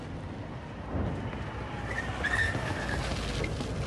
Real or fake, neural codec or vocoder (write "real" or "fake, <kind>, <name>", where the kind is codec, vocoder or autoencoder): real